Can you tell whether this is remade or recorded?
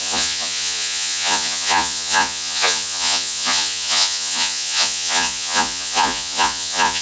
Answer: remade